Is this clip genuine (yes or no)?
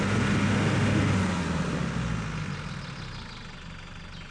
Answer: yes